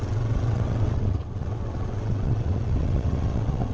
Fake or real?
fake